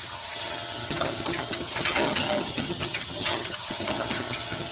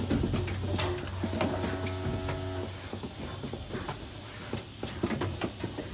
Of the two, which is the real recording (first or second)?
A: second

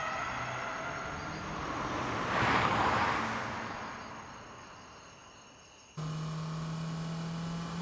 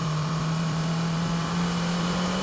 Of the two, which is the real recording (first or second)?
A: first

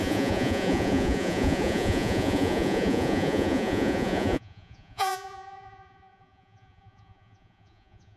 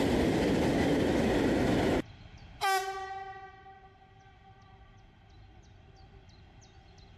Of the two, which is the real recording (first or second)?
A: second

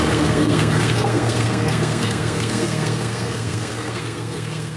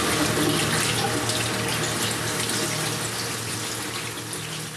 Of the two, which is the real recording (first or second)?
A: second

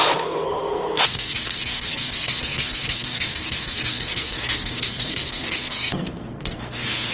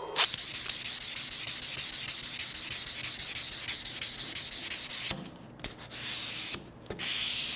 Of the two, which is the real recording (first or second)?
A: second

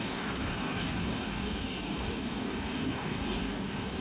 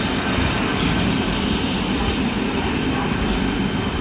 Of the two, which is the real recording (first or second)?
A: second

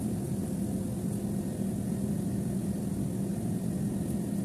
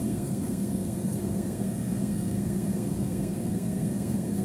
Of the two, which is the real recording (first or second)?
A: first